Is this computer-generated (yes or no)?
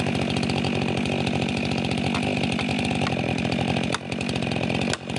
no